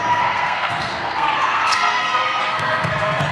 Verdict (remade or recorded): remade